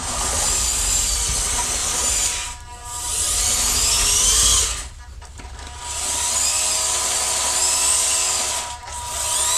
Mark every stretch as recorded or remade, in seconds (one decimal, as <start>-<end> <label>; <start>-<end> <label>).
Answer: 0.0-1.8 recorded; 1.8-4.3 remade; 4.3-9.6 recorded